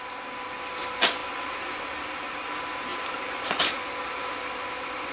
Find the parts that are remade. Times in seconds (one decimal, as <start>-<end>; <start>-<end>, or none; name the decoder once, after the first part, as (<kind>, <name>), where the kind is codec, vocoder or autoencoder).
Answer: 1.2-2.5 (vocoder, BigVGAN v2); 2.9-3.8